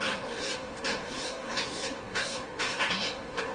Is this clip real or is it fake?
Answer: fake